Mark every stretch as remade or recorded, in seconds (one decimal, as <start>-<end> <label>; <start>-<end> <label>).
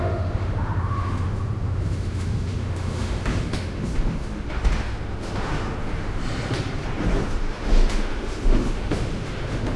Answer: 0.0-6.2 remade; 6.2-7.2 recorded; 7.2-9.8 remade